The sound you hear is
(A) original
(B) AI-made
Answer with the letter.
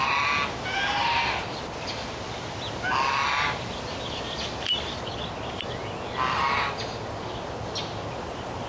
A